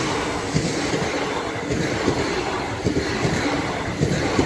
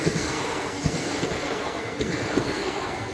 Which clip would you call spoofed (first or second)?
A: second